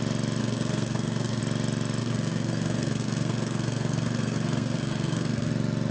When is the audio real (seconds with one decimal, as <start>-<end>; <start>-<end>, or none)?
0.0-0.4; 1.4-2.0; 5.5-5.9